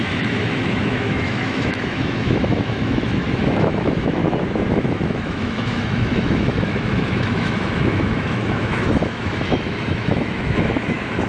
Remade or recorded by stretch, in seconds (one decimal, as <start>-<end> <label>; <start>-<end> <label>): 0.0-4.2 remade; 4.2-4.7 recorded; 4.7-11.3 remade